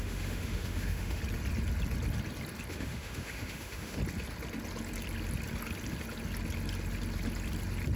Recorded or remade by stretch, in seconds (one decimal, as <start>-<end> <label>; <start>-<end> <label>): 0.0-1.2 remade; 1.2-2.7 recorded; 2.7-4.0 remade; 4.0-8.0 recorded